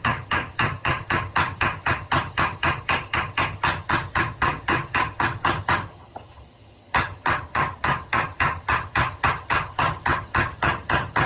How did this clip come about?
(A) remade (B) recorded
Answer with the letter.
A